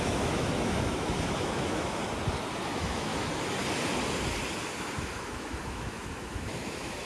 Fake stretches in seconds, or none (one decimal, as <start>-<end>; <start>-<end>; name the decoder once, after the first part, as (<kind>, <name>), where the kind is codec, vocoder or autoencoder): 0.0-2.0 (autoencoder, DAC-VAE); 2.6-3.1; 4.9-7.1